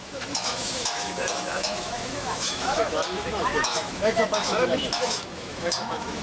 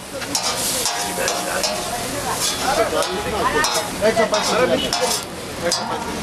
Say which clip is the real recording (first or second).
second